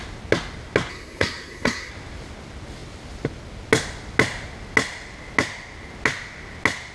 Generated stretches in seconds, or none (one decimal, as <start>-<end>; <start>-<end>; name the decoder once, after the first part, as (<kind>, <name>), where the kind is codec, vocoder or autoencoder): 0.9-1.9 (codec, SNAC)